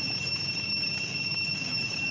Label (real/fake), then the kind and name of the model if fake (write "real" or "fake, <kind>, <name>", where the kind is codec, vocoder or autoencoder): fake, autoencoder, DAC-VAE